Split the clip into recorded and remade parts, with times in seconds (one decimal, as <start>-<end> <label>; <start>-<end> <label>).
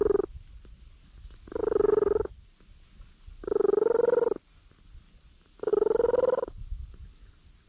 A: 0.0-1.6 recorded; 1.6-2.4 remade; 2.4-5.7 recorded; 5.7-6.6 remade; 6.6-7.7 recorded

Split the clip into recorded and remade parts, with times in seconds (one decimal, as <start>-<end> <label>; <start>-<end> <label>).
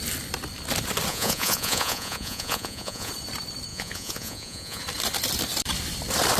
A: 0.0-1.1 recorded; 1.1-3.1 remade; 3.1-3.7 recorded; 3.7-4.8 remade; 4.8-6.4 recorded